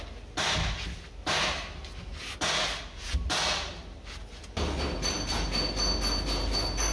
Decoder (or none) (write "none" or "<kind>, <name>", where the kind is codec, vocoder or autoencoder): none